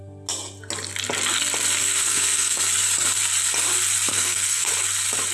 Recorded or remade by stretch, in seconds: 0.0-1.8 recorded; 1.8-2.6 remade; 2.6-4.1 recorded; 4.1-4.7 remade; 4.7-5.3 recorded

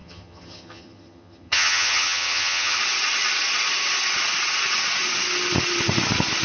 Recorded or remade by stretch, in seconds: 0.0-2.8 remade; 2.8-6.4 recorded

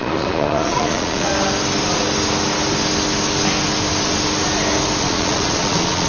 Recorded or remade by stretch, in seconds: 0.0-1.3 remade; 1.3-5.0 recorded; 5.0-6.1 remade

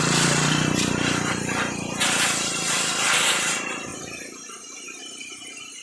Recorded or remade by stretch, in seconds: 0.0-3.9 remade; 3.9-5.0 recorded; 5.0-5.8 remade

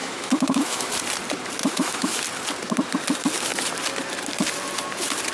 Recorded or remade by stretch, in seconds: 0.0-0.9 remade; 0.9-1.6 recorded; 1.6-2.2 remade; 2.2-5.3 recorded

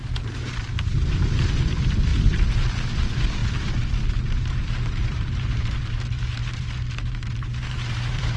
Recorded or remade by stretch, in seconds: 0.0-2.1 remade; 2.1-2.7 recorded; 2.7-8.4 remade

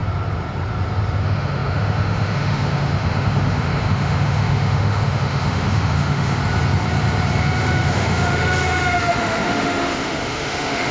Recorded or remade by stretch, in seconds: 0.0-1.2 recorded; 1.2-6.4 remade; 6.4-7.4 recorded; 7.4-10.9 remade

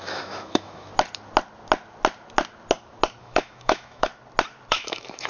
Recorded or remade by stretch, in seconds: 0.0-0.9 remade; 0.9-3.2 recorded; 3.2-4.1 remade; 4.1-4.7 recorded; 4.7-5.3 remade